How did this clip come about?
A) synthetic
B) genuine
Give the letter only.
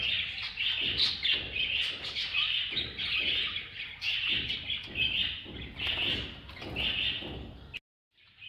B